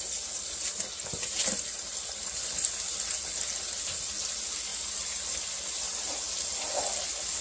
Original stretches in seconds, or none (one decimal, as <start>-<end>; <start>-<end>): 0.0-7.4